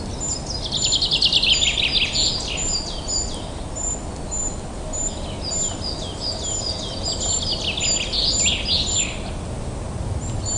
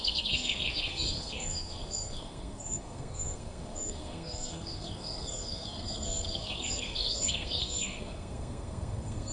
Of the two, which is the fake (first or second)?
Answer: second